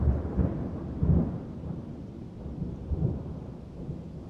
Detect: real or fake real